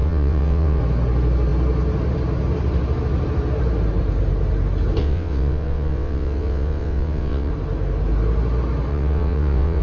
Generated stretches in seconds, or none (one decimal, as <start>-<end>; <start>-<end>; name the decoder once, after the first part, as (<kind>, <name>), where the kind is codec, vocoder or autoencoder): 0.0-0.8 (vocoder, WaveNeXt); 5.0-7.5; 8.9-9.8